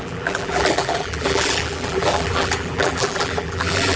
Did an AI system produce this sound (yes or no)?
yes